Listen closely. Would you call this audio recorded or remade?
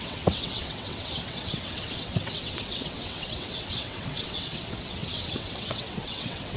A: remade